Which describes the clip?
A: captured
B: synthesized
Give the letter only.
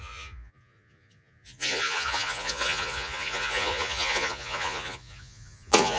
B